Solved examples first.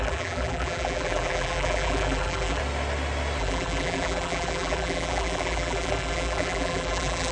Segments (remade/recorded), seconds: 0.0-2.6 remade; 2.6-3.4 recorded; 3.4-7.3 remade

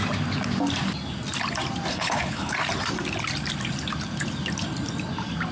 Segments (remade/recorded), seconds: 0.0-1.9 recorded; 1.9-2.5 remade; 2.5-5.5 recorded

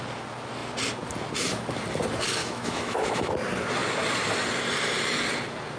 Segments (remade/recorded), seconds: 0.0-2.4 recorded; 2.4-3.3 remade; 3.3-5.8 recorded

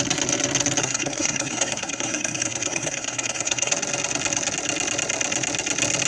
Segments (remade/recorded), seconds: 0.0-0.8 recorded; 0.8-3.7 remade; 3.7-6.1 recorded

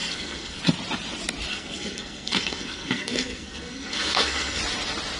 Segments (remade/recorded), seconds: 0.0-0.6 remade; 0.6-1.5 recorded; 1.5-4.6 remade; 4.6-5.2 recorded

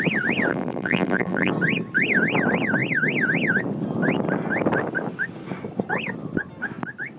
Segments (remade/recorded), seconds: 0.0-0.5 recorded; 0.5-1.5 remade; 1.5-7.2 recorded

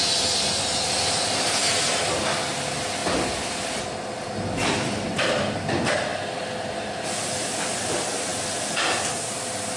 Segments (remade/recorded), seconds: 0.0-9.8 recorded

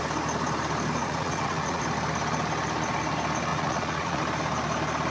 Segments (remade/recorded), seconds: 0.0-1.0 recorded; 1.0-1.8 remade; 1.8-3.5 recorded; 3.5-4.2 remade; 4.2-5.1 recorded